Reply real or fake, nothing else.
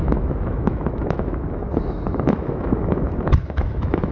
fake